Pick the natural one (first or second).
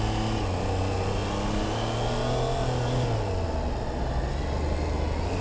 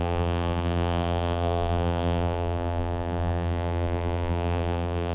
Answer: first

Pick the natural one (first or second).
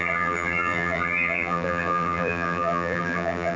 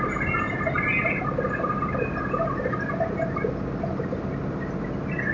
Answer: second